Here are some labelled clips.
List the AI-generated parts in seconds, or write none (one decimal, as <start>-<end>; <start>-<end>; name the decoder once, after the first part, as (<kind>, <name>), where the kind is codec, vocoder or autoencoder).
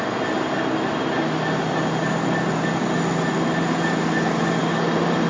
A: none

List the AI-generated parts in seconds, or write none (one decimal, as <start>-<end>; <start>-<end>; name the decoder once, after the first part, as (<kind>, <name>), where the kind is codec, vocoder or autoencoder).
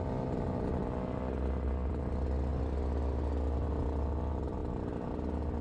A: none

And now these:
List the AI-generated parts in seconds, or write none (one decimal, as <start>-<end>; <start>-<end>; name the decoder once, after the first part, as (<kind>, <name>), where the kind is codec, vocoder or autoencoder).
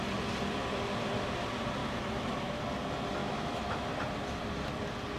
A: 1.8-2.6 (autoencoder, DAC-VAE); 3.2-3.9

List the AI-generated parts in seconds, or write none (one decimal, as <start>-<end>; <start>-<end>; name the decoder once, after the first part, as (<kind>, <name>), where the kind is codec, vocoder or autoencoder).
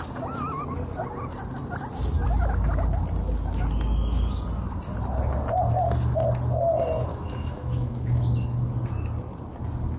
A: 7.1-8.2 (autoencoder, DAC-VAE)